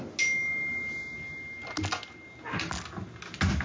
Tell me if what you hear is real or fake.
real